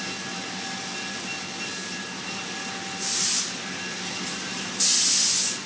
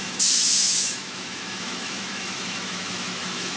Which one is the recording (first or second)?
first